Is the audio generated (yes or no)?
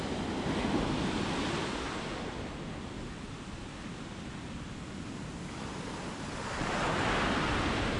no